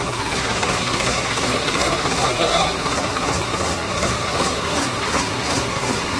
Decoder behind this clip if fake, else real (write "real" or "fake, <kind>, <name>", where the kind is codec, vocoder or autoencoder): fake, codec, SNAC